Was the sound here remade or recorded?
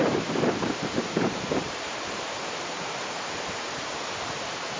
remade